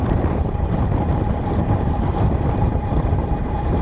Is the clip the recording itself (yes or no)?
no